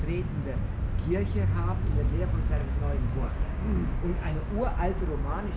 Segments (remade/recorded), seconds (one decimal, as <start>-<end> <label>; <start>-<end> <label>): 0.0-2.6 recorded; 2.6-4.5 remade; 4.5-5.6 recorded